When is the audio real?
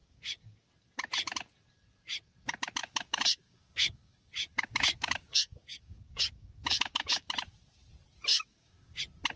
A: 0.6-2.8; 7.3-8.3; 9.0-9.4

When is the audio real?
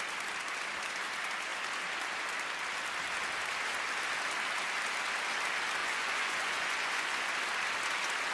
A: 0.0-5.8; 7.3-8.3